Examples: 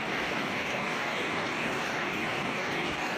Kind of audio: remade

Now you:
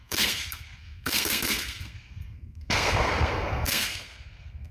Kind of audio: remade